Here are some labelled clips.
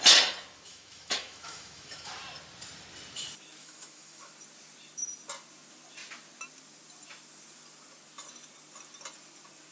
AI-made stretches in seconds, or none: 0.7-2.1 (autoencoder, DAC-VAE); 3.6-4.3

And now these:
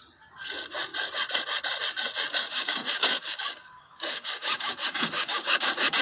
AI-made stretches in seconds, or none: 2.3-6.0 (codec, DAC)

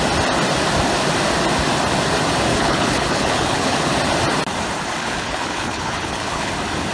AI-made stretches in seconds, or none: 2.5-3.9 (codec, HILCodec); 5.0-6.5

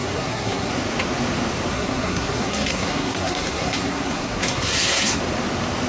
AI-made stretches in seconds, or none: 0.0-0.7 (codec, SNAC); 1.7-5.2

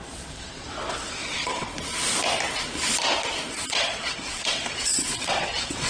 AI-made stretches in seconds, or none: 0.0-1.7 (vocoder, WaveNeXt); 3.5-5.9

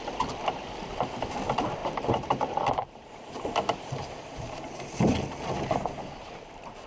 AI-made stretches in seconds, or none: 1.8-4.1 (vocoder, BigVGAN v2); 6.2-6.9

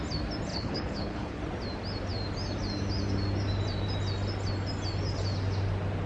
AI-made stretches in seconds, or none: 0.5-1.4 (codec, HILCodec)